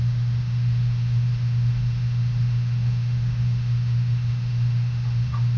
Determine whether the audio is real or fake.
fake